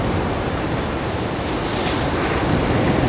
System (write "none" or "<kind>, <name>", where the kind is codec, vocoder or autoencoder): none